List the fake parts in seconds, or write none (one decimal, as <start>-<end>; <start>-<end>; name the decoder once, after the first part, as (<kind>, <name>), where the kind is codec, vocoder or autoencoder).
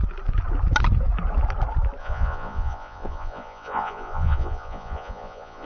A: 2.0-5.7 (vocoder, Vocos)